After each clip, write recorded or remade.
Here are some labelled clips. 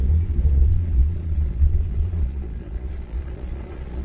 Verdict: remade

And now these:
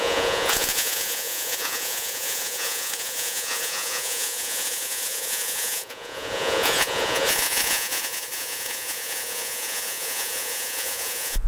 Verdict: remade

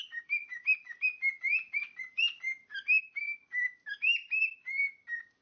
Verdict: recorded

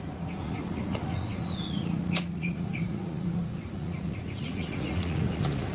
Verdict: remade